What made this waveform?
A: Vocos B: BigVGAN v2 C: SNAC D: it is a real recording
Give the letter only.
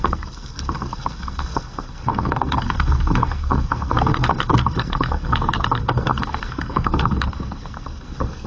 C